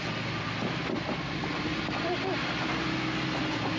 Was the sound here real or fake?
real